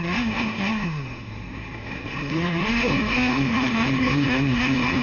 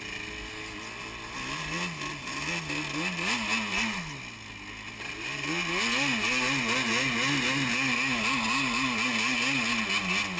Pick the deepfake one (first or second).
first